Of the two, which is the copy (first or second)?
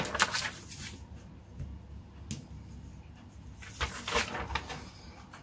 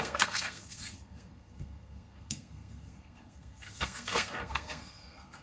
second